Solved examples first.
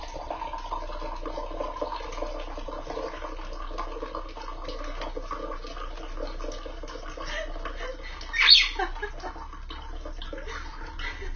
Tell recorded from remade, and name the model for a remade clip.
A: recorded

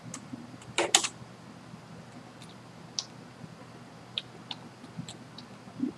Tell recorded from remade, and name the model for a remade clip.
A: recorded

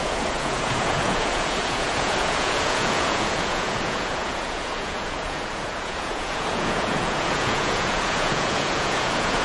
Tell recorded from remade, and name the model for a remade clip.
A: remade, vocoder, Vocos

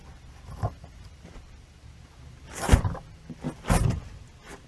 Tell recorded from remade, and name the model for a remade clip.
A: recorded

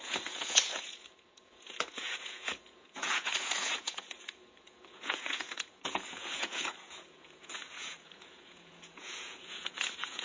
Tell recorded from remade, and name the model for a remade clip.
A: remade, vocoder, Vocos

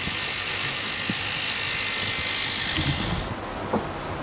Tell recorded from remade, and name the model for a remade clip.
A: recorded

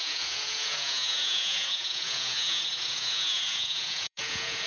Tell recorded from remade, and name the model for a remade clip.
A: remade, vocoder, Vocos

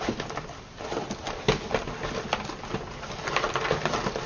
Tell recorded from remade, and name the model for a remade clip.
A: recorded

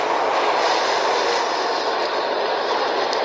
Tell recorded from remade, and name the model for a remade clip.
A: recorded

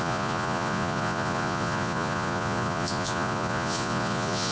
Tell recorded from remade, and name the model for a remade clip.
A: remade, vocoder, Vocos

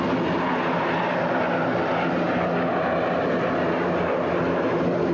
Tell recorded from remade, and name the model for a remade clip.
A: recorded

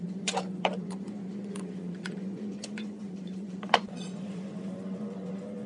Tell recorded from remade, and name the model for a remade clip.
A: remade, vocoder, Vocos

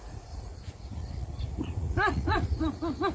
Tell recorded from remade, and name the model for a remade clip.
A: remade, vocoder, Vocos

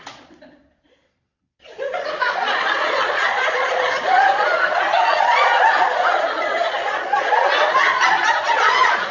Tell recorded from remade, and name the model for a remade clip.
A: remade, vocoder, Vocos